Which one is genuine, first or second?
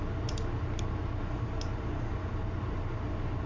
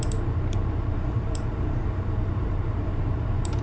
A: first